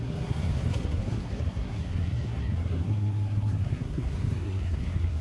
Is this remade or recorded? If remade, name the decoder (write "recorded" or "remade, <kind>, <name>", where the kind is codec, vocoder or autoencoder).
remade, codec, SNAC